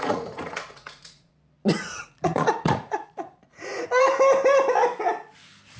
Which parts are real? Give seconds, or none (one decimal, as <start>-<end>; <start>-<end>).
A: 1.3-1.8; 4.1-5.8

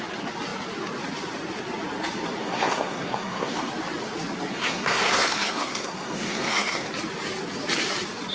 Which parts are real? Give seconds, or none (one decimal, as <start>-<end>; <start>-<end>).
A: 0.0-2.4; 3.7-4.5; 6.9-8.3

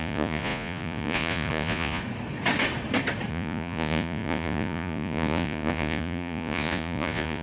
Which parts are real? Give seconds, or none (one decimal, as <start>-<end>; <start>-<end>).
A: 2.0-3.3

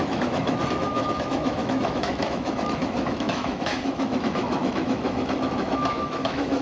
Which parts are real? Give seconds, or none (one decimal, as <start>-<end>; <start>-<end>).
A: none

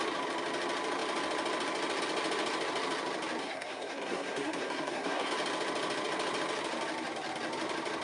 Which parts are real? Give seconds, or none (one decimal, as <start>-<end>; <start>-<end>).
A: 0.0-3.4; 5.3-8.0

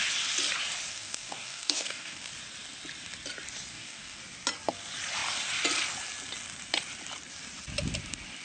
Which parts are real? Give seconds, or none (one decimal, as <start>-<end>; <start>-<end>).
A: 0.0-0.9; 2.3-3.7; 4.2-8.4